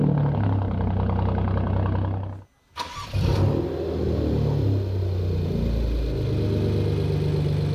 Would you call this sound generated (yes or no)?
no